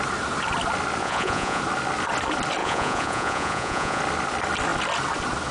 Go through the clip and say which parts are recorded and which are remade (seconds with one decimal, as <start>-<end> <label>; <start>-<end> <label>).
0.0-1.0 recorded; 1.0-1.6 remade; 1.6-2.6 recorded; 2.6-4.0 remade; 4.0-5.5 recorded